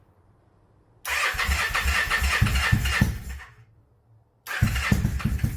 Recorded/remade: recorded